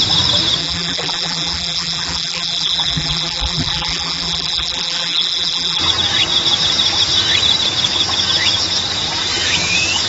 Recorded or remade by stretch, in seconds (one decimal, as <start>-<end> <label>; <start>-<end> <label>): 0.0-0.6 recorded; 0.6-5.8 remade; 5.8-10.1 recorded